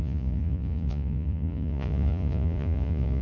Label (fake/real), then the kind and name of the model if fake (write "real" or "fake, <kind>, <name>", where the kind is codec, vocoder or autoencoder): fake, vocoder, Vocos